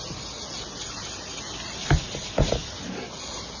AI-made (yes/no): no